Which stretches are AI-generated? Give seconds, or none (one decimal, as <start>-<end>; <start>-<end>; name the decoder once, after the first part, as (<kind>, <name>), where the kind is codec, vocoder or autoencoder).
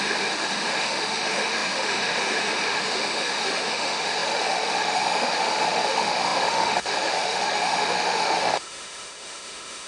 0.0-9.9 (autoencoder, DAC-VAE)